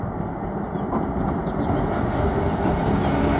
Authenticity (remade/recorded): recorded